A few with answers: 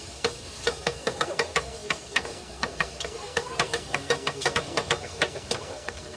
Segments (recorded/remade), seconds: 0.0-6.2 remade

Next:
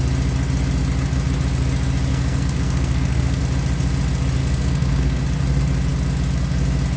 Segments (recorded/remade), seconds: 0.0-2.1 recorded; 2.1-3.4 remade; 3.4-4.4 recorded; 4.4-5.2 remade; 5.2-7.0 recorded

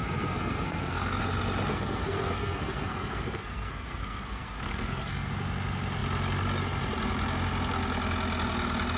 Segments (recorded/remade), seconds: 0.0-1.2 remade; 1.2-1.7 recorded; 1.7-5.3 remade; 5.3-9.0 recorded

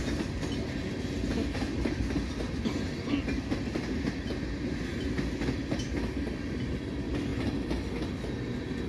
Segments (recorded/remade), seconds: 0.0-8.9 recorded

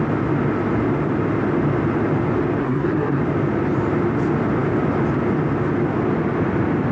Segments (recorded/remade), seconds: 0.0-2.6 recorded; 2.6-3.2 remade; 3.2-6.9 recorded

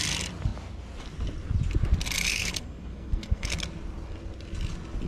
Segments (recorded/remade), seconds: 0.0-2.3 recorded; 2.3-3.5 remade; 3.5-5.1 recorded